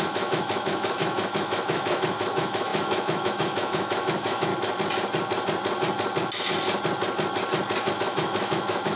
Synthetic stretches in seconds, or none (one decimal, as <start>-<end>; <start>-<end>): 0.0-4.5; 7.9-9.0